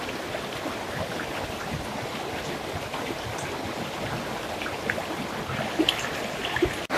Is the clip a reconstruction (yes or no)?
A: no